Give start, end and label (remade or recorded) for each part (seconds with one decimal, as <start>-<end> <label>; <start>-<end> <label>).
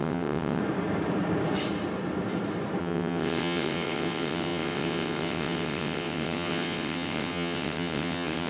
0.0-0.6 remade; 0.6-2.8 recorded; 2.8-8.5 remade